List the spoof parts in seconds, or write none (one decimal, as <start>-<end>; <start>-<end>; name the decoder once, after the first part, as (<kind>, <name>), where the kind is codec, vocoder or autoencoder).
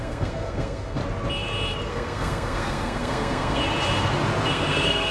0.0-1.0 (codec, SNAC); 1.9-3.6; 4.5-5.1